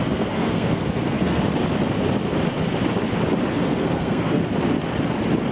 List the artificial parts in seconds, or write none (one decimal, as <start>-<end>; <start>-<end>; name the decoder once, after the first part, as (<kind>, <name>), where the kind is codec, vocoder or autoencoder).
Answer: 0.0-1.4 (codec, SNAC); 3.5-4.4